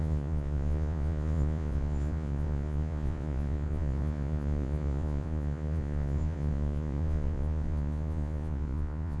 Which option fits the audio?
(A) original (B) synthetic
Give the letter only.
B